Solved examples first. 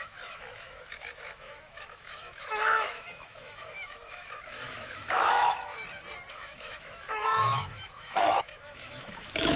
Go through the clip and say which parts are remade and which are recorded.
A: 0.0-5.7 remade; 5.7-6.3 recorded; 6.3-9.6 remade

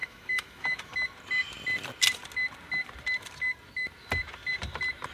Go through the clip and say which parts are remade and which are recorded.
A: 0.0-0.9 remade; 0.9-5.1 recorded

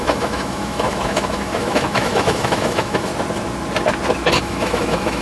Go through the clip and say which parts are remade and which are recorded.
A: 0.0-3.1 remade; 3.1-4.4 recorded; 4.4-5.2 remade

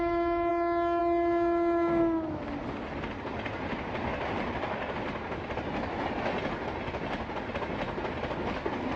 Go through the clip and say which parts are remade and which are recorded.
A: 0.0-9.0 recorded